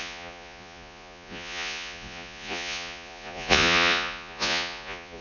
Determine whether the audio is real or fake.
fake